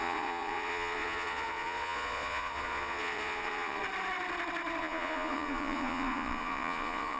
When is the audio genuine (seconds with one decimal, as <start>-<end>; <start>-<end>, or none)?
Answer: 3.8-4.8